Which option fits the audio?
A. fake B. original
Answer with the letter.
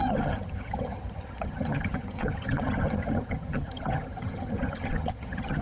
A